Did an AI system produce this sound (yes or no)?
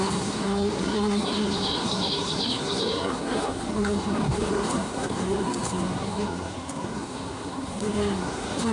yes